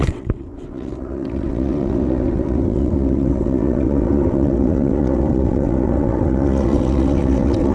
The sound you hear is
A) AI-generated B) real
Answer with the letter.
A